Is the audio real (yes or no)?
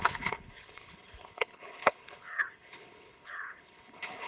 no